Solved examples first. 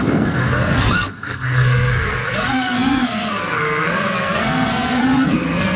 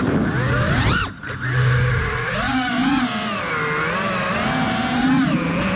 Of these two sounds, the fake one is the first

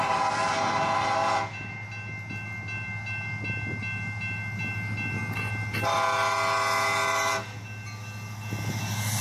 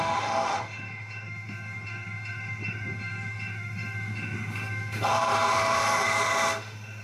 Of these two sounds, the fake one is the second